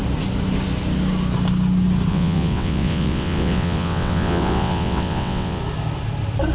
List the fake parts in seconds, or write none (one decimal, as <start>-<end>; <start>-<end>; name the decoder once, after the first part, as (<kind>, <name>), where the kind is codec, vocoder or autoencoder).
2.1-5.6 (vocoder, WaveNeXt)